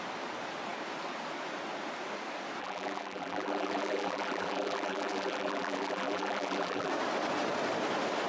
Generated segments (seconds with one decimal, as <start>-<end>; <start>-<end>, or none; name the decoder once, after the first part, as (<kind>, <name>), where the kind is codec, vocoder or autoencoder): 2.6-6.9 (vocoder, BigVGAN v2)